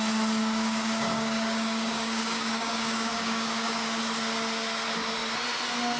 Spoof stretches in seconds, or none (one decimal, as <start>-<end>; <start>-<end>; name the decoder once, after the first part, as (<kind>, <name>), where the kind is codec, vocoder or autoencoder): 0.4-4.0 (codec, DAC)